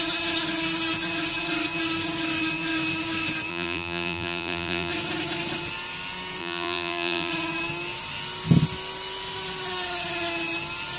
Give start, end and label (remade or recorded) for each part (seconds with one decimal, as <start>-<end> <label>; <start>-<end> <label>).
0.0-3.5 recorded; 3.5-4.9 remade; 4.9-6.4 recorded; 6.4-7.3 remade; 7.3-11.0 recorded